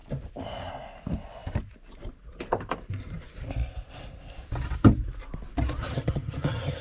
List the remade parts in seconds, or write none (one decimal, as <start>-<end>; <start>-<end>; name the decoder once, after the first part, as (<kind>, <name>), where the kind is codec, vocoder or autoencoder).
5.8-6.8 (vocoder, HiFi-GAN)